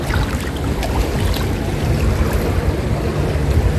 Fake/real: real